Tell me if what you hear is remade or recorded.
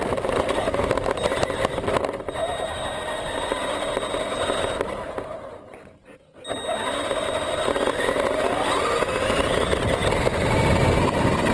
recorded